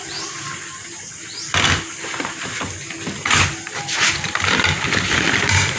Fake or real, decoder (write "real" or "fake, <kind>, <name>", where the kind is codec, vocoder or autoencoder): fake, vocoder, BigVGAN v2